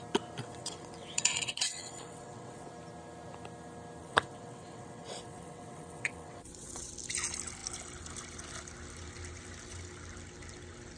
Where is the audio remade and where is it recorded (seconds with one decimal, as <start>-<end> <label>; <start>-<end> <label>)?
0.0-0.4 recorded; 0.4-2.7 remade; 2.7-4.0 recorded; 4.0-6.9 remade; 6.9-11.0 recorded